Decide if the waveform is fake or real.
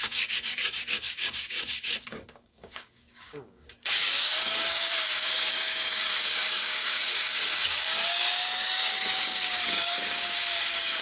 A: fake